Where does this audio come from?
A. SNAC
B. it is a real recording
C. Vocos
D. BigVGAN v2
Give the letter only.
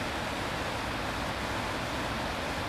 B